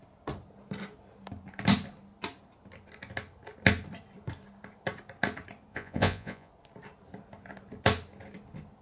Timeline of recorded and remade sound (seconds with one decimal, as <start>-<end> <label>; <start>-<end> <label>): 0.0-5.7 recorded; 5.7-6.5 remade; 6.5-8.8 recorded